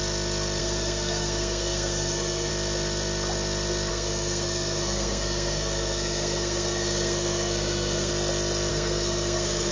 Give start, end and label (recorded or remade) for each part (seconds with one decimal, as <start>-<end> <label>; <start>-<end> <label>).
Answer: 0.0-0.6 recorded; 0.6-2.5 remade; 2.5-3.9 recorded; 3.9-8.1 remade; 8.1-8.7 recorded; 8.7-9.7 remade